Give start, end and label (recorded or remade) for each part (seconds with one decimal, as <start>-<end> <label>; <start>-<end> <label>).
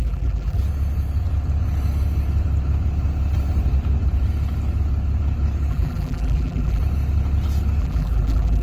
0.0-0.6 remade; 0.6-5.7 recorded; 5.7-6.8 remade; 6.8-7.8 recorded; 7.8-8.6 remade